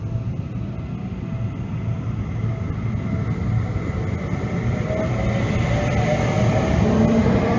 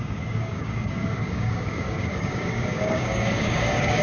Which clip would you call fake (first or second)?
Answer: second